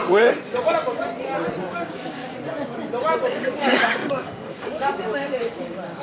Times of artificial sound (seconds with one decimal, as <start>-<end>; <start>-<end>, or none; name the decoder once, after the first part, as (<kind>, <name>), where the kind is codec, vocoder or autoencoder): 1.8-2.2 (codec, DAC); 3.3-6.0